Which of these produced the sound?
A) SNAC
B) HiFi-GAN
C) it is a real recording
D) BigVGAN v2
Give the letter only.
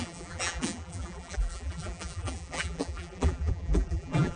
D